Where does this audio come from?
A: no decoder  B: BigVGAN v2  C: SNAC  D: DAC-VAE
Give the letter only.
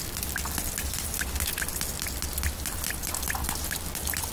A